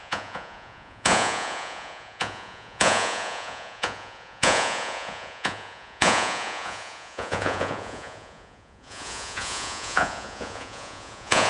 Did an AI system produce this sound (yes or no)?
yes